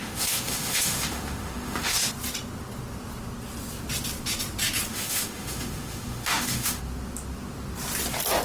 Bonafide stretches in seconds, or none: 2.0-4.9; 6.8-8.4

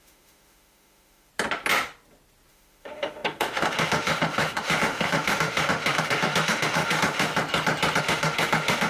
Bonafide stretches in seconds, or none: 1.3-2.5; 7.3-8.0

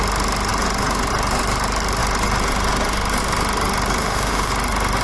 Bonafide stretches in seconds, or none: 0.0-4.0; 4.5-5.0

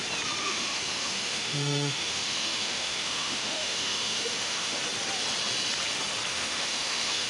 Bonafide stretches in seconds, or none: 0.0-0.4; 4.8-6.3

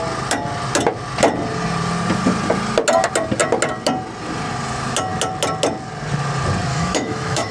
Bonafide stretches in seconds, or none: 0.0-6.7

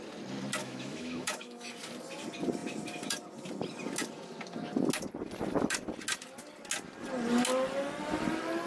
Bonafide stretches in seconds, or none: 0.0-0.6; 1.7-8.7

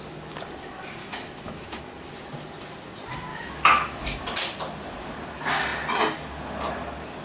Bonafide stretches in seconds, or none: 0.0-1.0; 1.8-3.3; 4.0-7.2